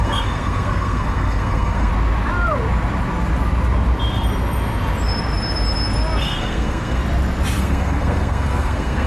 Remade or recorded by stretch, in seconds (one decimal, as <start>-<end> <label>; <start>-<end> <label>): 0.0-1.9 remade; 1.9-6.2 recorded; 6.2-7.0 remade; 7.0-7.6 recorded; 7.6-9.1 remade